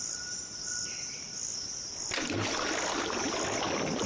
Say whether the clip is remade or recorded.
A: recorded